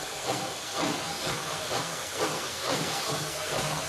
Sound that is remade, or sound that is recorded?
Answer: remade